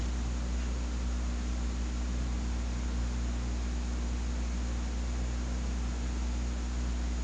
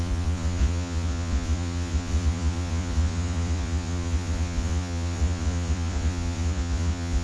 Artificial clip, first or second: second